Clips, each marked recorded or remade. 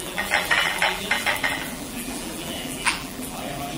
remade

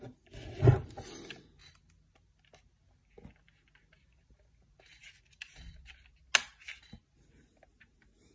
recorded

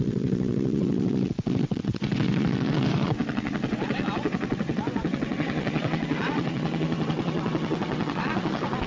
remade